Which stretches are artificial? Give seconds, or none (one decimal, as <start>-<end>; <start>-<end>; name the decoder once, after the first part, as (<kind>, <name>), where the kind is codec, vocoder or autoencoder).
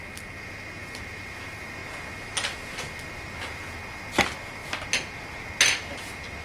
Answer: none